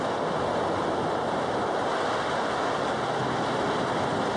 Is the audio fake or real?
real